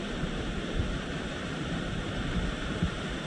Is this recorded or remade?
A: remade